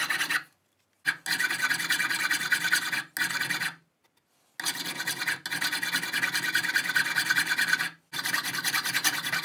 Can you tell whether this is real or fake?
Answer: real